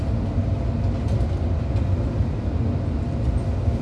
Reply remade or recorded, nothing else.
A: recorded